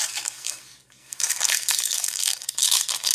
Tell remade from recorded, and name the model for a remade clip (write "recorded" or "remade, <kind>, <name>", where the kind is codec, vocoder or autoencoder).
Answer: remade, codec, SNAC